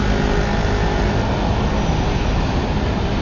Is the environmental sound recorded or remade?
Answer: recorded